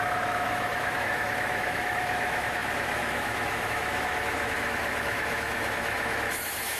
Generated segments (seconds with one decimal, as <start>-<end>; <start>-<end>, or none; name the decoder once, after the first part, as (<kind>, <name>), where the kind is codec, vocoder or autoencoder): 0.0-6.8 (autoencoder, DAC-VAE)

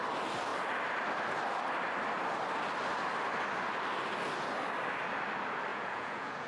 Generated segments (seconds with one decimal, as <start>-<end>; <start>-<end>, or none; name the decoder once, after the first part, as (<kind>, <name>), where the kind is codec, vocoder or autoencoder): 5.7-6.5 (vocoder, Vocos)

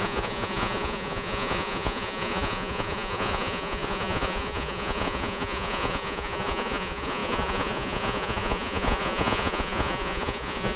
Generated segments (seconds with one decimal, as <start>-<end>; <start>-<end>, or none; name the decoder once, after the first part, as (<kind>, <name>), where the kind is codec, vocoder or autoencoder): 0.0-10.8 (vocoder, Vocos)

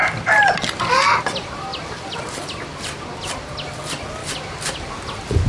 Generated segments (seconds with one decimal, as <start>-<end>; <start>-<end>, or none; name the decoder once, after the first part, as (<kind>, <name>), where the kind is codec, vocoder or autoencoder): none

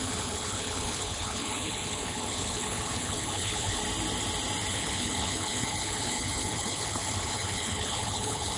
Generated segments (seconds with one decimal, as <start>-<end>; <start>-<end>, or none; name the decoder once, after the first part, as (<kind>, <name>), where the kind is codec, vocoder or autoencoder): 0.0-3.8 (codec, HILCodec); 4.7-8.6

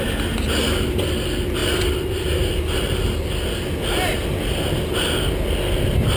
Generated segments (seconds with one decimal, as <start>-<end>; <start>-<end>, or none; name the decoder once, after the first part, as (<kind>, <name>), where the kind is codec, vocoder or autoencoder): none